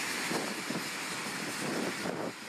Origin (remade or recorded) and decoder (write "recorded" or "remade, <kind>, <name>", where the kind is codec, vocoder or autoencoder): remade, vocoder, BigVGAN v2